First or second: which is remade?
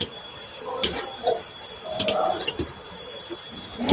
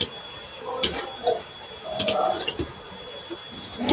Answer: first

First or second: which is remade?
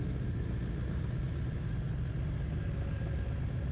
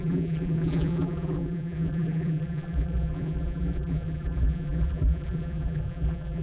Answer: second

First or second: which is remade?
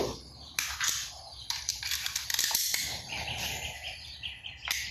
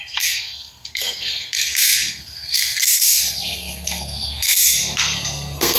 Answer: second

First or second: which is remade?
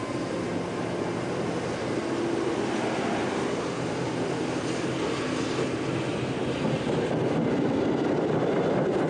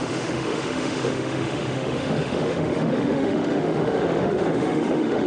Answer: second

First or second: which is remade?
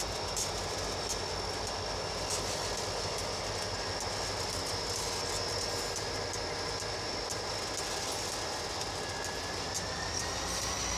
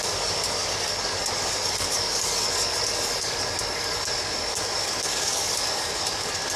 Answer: second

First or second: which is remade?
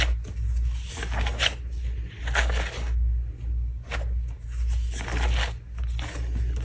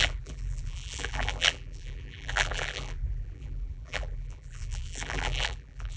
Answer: second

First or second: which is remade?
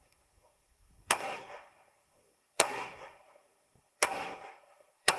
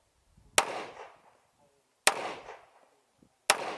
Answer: first